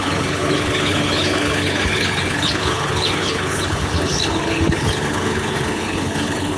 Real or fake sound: fake